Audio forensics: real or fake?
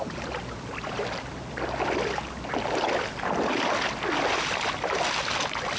real